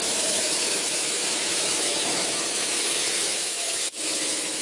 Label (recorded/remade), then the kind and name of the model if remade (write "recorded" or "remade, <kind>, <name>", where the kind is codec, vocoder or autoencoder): remade, autoencoder, DAC-VAE